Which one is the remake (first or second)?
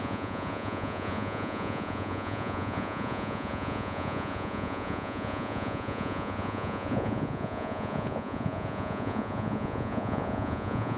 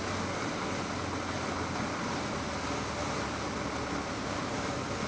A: first